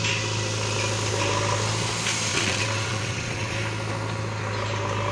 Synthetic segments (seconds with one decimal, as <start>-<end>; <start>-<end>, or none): 2.3-3.5